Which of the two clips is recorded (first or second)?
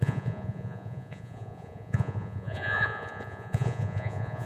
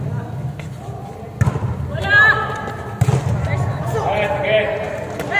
second